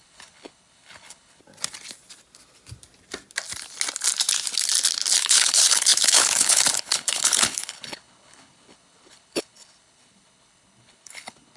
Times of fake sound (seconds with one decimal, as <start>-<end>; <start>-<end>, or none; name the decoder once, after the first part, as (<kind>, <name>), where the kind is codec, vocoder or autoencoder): 0.0-1.4 (codec, HILCodec); 5.2-11.6